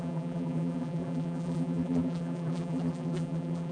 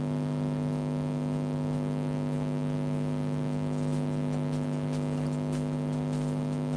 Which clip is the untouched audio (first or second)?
second